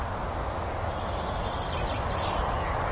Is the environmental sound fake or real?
real